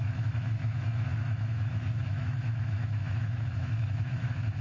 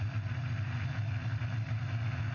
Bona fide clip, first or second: second